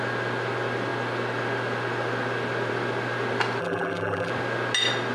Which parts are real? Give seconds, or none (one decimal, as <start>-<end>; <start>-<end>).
0.0-3.6; 4.3-5.1